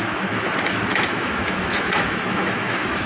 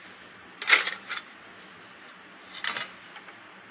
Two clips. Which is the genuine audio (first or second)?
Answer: second